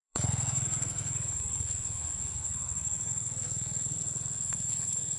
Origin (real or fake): fake